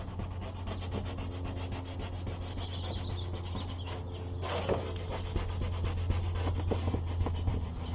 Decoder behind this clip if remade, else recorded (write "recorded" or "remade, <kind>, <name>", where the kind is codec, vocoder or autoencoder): recorded